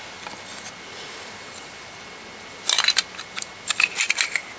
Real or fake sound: real